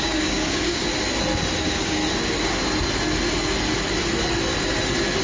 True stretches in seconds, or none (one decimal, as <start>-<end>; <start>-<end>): 0.9-1.6; 2.0-5.2